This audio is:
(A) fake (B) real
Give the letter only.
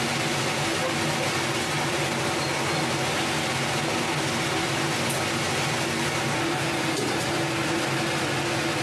B